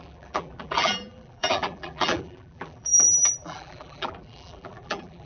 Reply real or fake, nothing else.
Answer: fake